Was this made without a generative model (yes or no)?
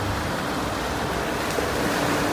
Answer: yes